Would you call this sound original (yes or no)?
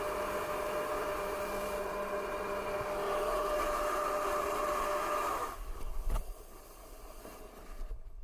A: yes